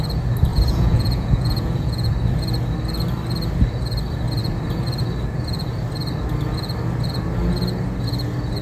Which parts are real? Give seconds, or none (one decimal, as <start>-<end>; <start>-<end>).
0.0-0.5; 2.1-8.6